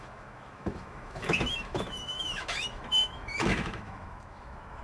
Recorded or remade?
remade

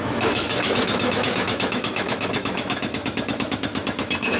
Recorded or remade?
remade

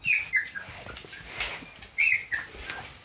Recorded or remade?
recorded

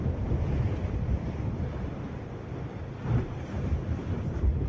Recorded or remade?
recorded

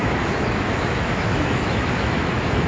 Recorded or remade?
remade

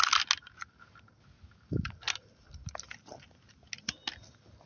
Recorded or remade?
recorded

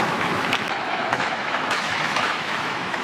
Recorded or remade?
remade